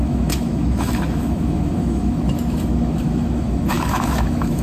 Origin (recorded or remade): remade